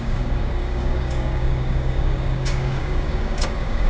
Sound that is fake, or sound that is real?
fake